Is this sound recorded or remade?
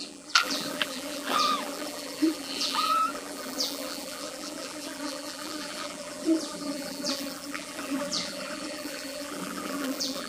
remade